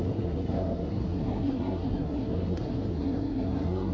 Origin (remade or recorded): remade